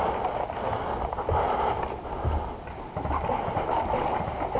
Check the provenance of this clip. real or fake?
real